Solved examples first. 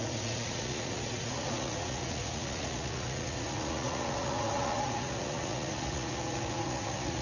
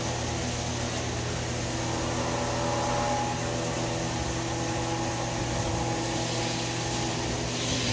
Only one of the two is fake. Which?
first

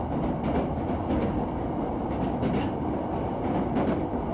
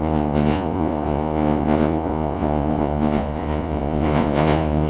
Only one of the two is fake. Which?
second